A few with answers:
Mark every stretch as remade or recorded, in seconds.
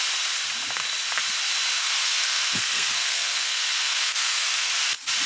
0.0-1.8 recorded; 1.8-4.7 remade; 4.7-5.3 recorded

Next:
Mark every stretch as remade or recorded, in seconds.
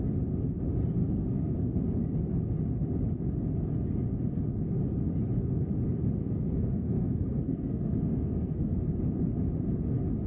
0.0-1.0 recorded; 1.0-1.8 remade; 1.8-6.2 recorded; 6.2-8.8 remade; 8.8-10.3 recorded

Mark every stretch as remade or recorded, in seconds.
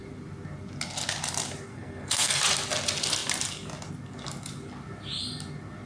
0.0-1.7 recorded; 1.7-2.4 remade; 2.4-5.9 recorded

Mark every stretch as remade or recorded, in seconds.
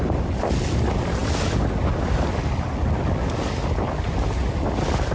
0.0-5.1 recorded